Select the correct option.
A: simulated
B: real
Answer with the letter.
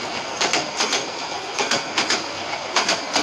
A